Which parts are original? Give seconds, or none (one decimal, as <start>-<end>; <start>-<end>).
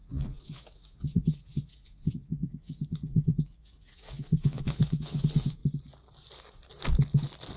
5.6-7.6